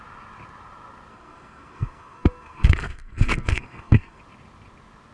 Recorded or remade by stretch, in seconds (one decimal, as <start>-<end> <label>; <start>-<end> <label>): 0.0-1.1 recorded; 1.1-4.2 remade; 4.2-5.1 recorded